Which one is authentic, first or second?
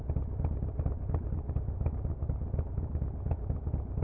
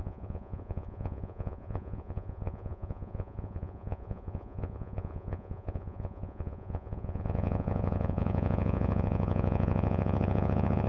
first